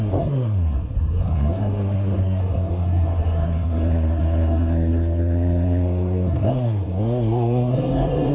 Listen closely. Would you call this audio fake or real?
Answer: fake